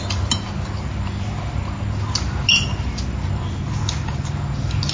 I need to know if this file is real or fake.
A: real